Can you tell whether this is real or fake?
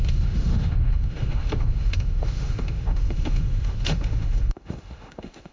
fake